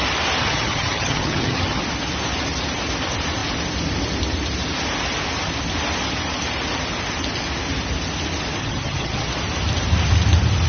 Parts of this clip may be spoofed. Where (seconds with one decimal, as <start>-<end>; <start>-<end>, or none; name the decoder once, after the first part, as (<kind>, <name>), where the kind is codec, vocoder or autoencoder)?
0.4-1.8 (vocoder, HiFi-GAN); 8.6-9.3